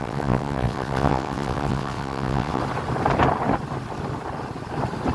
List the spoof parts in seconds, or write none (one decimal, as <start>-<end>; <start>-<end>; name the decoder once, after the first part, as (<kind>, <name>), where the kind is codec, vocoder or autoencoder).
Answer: 0.0-2.6 (vocoder, WaveNeXt)